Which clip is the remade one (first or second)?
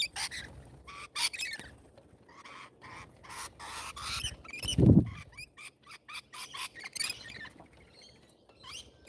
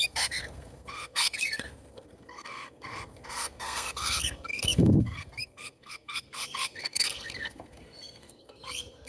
second